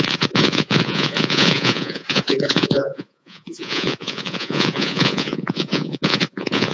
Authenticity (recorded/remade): remade